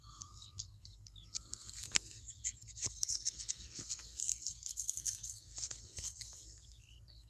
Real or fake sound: fake